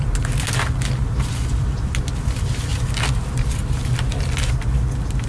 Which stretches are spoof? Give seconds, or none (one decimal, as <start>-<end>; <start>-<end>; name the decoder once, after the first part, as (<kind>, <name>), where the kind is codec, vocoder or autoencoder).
none